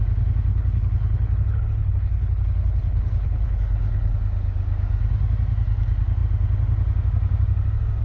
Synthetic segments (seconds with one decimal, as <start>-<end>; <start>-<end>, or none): 0.5-4.1